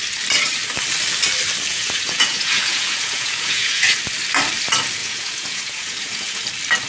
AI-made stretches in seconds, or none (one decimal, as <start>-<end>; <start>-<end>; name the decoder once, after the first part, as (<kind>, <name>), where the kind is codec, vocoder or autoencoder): 1.7-4.0 (vocoder, Vocos); 5.0-6.4